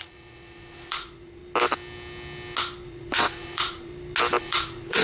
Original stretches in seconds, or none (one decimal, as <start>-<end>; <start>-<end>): 1.4-2.9; 3.9-4.4